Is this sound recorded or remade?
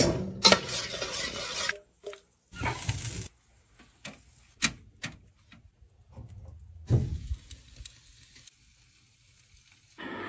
recorded